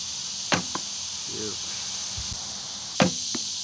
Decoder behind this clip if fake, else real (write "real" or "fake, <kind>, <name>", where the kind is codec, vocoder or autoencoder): real